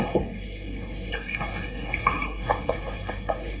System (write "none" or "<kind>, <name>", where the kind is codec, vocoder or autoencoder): codec, SNAC